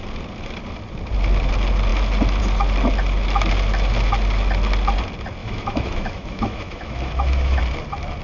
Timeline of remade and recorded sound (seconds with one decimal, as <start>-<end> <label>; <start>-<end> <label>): 0.0-5.4 recorded; 5.4-7.6 remade; 7.6-8.2 recorded